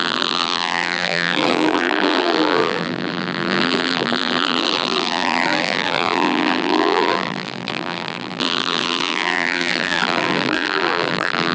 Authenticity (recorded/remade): remade